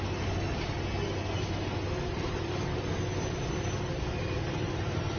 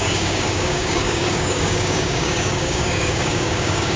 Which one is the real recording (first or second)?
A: first